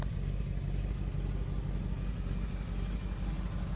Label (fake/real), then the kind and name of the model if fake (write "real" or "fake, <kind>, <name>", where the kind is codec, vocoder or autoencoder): real